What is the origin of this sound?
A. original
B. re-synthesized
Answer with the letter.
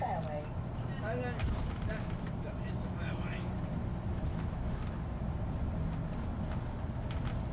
A